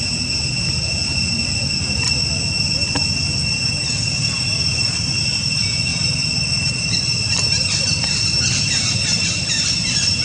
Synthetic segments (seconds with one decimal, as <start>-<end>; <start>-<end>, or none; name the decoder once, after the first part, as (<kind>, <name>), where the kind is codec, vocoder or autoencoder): 5.9-9.5 (vocoder, BigVGAN v2)